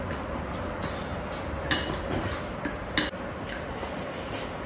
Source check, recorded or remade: recorded